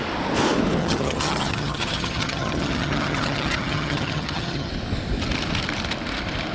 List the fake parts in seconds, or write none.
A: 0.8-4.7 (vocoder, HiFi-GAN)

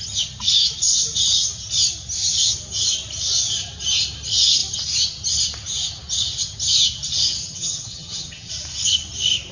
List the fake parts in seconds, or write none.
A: 7.4-8.5 (vocoder, HiFi-GAN)

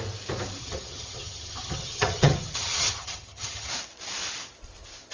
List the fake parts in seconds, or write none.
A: 0.6-3.7 (vocoder, HiFi-GAN)

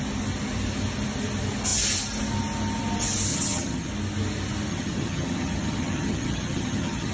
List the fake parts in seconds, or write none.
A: 3.3-3.9 (vocoder, HiFi-GAN); 4.7-7.1

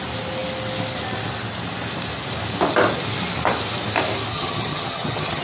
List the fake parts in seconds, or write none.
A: 4.3-5.4 (vocoder, HiFi-GAN)

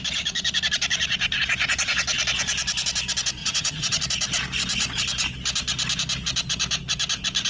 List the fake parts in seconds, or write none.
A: 3.4-4.0 (vocoder, HiFi-GAN)